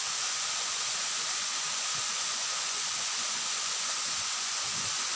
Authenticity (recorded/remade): remade